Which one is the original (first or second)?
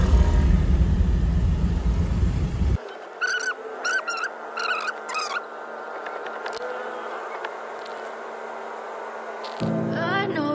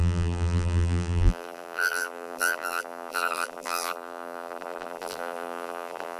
first